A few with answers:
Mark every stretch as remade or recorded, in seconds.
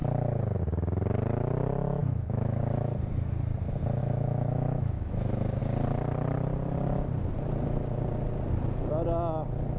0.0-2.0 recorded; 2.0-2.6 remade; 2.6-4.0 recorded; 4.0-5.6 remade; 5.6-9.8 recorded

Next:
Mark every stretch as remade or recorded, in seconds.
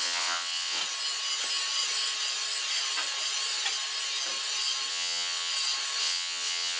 0.0-0.8 remade; 0.8-4.9 recorded; 4.9-5.5 remade; 5.5-6.0 recorded; 6.0-6.8 remade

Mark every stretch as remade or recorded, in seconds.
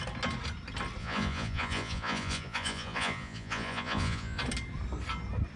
0.0-1.0 recorded; 1.0-4.4 remade; 4.4-5.6 recorded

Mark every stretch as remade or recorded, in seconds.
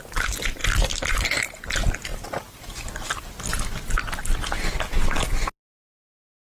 0.0-0.6 recorded; 0.6-1.2 remade; 1.2-2.1 recorded; 2.1-3.2 remade; 3.2-6.4 recorded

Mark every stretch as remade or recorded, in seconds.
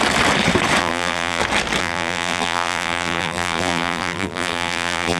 0.0-0.8 recorded; 0.8-1.4 remade; 1.4-1.8 recorded; 1.8-5.2 remade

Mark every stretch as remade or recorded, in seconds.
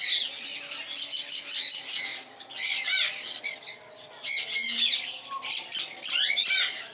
0.0-6.9 recorded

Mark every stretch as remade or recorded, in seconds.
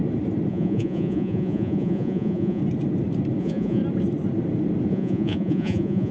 0.0-0.5 recorded; 0.5-2.6 remade; 2.6-3.4 recorded; 3.4-3.8 remade; 3.8-4.9 recorded; 4.9-6.1 remade